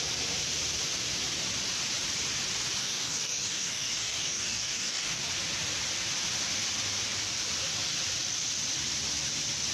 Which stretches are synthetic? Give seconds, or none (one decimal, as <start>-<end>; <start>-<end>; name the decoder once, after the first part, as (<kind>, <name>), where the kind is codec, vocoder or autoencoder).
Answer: 2.8-5.2 (codec, DAC)